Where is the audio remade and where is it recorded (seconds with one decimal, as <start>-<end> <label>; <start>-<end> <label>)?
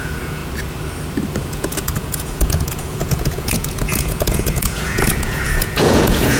0.0-0.4 remade; 0.4-1.5 recorded; 1.5-6.4 remade